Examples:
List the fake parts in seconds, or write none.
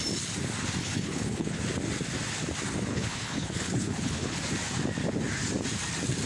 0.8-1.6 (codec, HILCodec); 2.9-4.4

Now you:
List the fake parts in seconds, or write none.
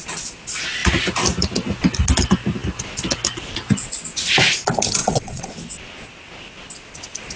5.0-5.5 (vocoder, WaveNeXt)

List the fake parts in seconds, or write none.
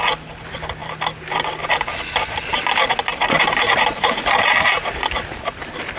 none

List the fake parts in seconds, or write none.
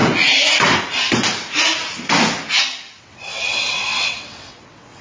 3.0-5.0 (vocoder, WaveNeXt)